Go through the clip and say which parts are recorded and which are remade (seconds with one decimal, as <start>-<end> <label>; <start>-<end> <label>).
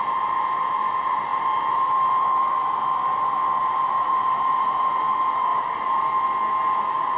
0.0-1.3 recorded; 1.3-2.5 remade; 2.5-3.6 recorded; 3.6-5.1 remade; 5.1-5.5 recorded; 5.5-6.1 remade; 6.1-7.2 recorded